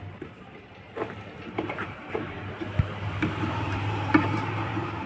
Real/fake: fake